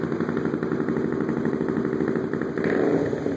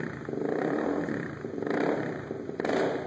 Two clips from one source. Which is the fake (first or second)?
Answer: second